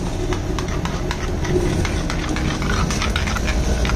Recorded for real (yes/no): yes